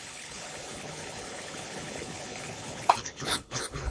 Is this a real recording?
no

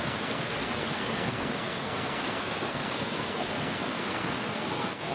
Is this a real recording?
no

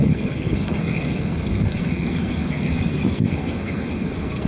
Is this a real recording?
no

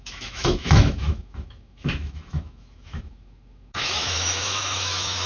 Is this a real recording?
no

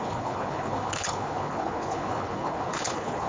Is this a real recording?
no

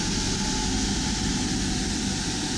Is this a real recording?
yes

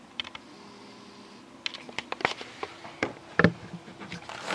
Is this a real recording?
yes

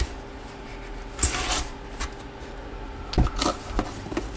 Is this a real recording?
yes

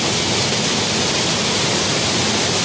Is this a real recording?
yes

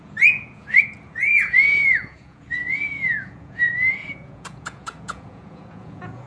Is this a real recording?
no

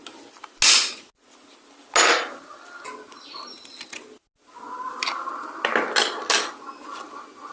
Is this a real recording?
yes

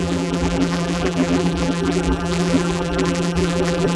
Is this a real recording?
no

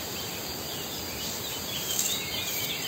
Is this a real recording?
no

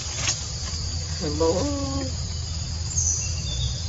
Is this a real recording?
yes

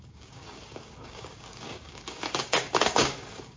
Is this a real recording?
no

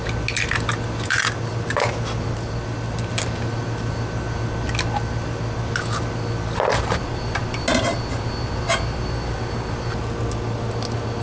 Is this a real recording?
yes